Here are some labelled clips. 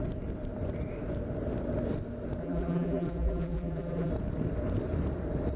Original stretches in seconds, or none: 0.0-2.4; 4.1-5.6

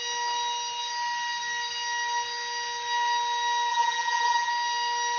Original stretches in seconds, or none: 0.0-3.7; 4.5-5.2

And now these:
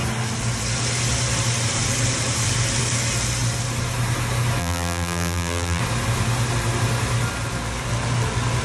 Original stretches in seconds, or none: 0.0-4.6; 5.8-8.6

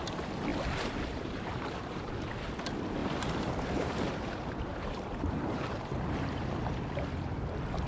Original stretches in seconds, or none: 0.0-0.5; 2.1-3.0; 6.4-7.9